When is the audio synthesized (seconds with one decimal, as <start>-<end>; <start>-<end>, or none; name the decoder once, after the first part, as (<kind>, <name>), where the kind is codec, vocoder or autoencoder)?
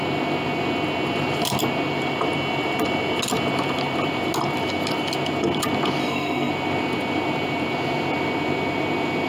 6.0-6.5 (codec, SNAC)